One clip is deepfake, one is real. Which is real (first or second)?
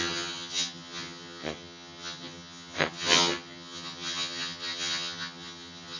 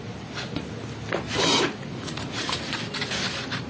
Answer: second